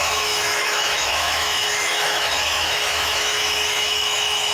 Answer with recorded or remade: remade